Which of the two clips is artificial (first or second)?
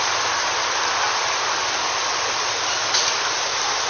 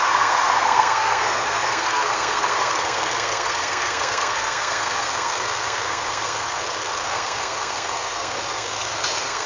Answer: second